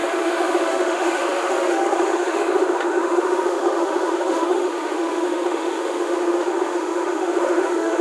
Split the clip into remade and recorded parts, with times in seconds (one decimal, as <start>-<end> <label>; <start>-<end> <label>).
0.0-8.0 remade